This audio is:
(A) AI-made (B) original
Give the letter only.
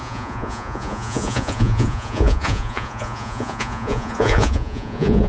A